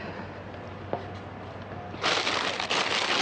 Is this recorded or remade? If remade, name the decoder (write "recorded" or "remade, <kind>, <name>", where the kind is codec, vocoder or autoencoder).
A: recorded